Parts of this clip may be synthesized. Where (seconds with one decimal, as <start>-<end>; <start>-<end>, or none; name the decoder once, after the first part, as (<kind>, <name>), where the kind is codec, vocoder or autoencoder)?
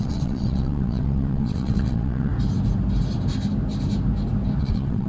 0.0-2.3 (vocoder, WaveNeXt); 4.6-5.1